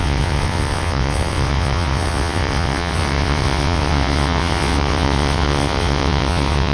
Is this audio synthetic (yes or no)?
yes